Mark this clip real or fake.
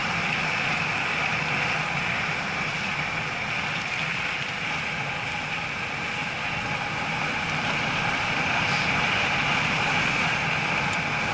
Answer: real